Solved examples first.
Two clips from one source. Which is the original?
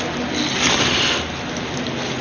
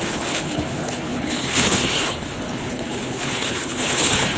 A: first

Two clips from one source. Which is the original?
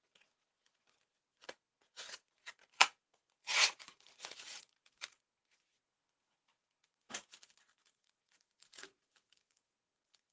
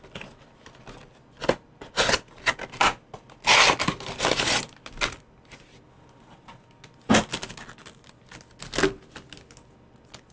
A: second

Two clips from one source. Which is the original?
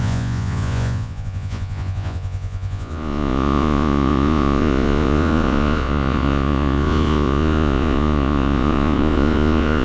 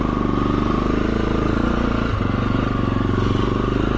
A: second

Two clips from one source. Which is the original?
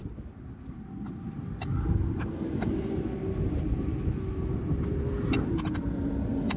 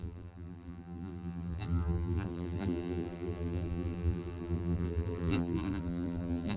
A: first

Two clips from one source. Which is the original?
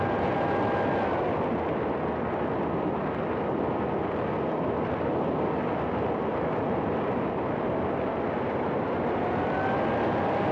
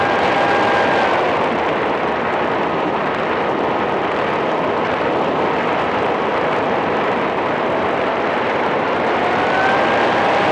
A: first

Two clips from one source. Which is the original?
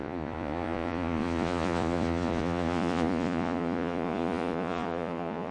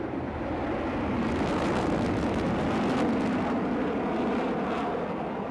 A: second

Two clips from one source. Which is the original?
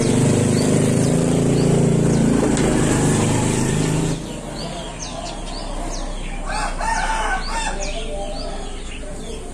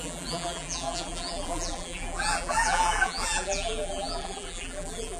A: first